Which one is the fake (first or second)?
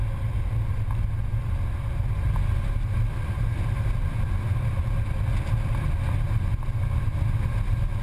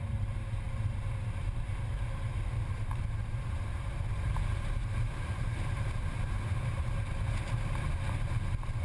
second